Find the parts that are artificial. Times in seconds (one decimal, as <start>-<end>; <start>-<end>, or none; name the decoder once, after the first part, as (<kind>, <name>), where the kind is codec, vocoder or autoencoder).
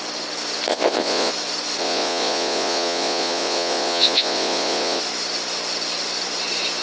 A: 0.7-1.3 (vocoder, Vocos); 1.8-5.0